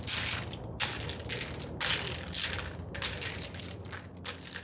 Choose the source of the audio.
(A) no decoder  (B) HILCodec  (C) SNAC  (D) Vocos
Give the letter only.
A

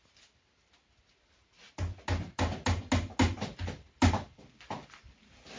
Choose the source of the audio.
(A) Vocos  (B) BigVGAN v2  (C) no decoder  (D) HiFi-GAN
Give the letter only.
C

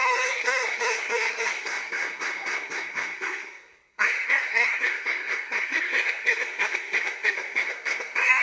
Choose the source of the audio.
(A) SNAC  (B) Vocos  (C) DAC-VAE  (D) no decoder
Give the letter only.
A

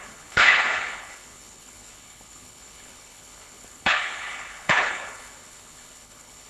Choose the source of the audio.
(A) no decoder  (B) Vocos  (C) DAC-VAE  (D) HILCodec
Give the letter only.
D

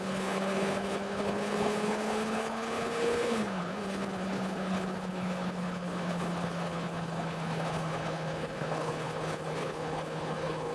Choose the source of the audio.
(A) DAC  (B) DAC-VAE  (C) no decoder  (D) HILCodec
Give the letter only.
D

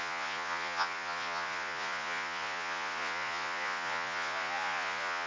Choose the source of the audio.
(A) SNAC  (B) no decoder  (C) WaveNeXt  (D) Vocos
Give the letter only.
D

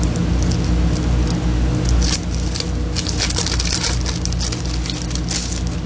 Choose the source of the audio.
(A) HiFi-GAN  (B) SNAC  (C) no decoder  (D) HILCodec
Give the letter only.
C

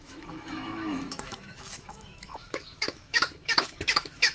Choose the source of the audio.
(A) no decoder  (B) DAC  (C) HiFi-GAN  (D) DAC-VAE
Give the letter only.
D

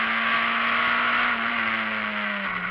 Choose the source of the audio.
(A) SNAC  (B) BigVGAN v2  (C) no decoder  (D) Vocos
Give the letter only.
C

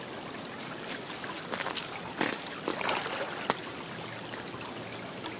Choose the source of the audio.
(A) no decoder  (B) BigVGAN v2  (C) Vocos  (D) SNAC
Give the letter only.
A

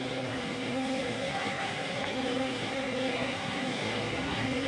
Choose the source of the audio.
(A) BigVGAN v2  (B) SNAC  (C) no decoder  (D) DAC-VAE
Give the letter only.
B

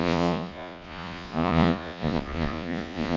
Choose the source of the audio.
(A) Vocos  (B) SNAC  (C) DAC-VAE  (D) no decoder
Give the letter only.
A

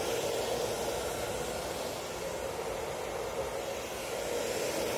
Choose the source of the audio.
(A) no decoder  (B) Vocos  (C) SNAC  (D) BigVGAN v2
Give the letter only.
A